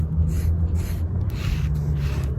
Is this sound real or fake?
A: real